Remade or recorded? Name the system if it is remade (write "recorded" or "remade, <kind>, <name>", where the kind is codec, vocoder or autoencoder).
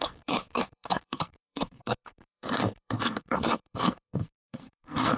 remade, codec, SNAC